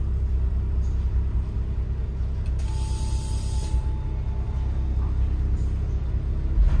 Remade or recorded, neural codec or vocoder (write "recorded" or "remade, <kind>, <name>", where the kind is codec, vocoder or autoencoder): recorded